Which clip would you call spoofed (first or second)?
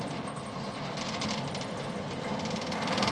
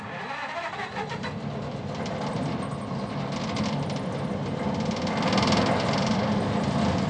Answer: first